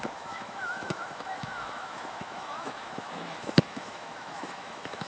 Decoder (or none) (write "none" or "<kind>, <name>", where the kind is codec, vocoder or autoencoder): autoencoder, DAC-VAE